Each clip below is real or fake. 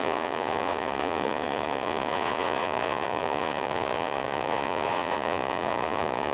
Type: fake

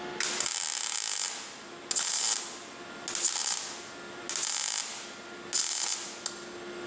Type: real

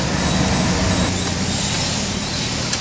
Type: real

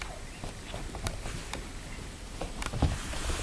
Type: real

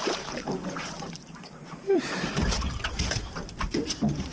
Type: fake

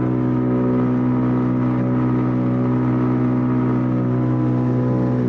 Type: real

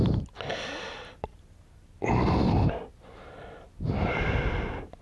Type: real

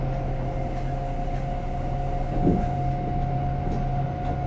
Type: real